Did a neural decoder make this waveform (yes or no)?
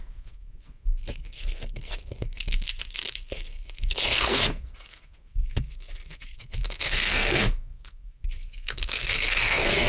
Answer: yes